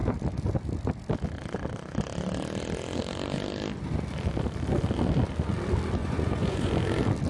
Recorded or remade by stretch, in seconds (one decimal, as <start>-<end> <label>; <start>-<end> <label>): 0.0-6.0 recorded; 6.0-6.7 remade; 6.7-7.3 recorded